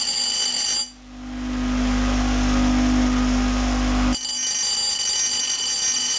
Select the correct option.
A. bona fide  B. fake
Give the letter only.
A